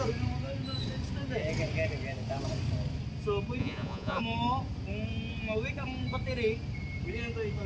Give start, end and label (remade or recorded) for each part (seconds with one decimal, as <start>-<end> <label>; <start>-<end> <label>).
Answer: 0.0-3.6 recorded; 3.6-4.2 remade; 4.2-7.7 recorded